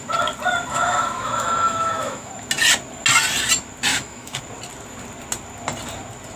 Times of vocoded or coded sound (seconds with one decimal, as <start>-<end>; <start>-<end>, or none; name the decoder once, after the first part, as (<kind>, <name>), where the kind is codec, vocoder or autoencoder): 0.7-2.3 (autoencoder, DAC-VAE); 3.9-4.4